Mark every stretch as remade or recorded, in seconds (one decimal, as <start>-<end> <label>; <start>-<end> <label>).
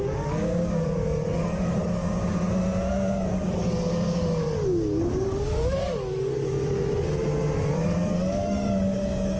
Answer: 0.0-2.0 remade; 2.0-2.9 recorded; 2.9-6.9 remade; 6.9-7.7 recorded; 7.7-9.4 remade